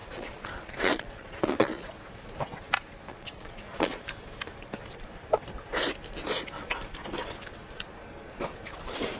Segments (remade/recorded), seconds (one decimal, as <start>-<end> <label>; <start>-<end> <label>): 0.0-1.9 remade; 1.9-3.1 recorded; 3.1-4.0 remade; 4.0-9.2 recorded